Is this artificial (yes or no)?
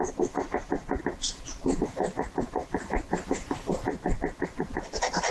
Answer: yes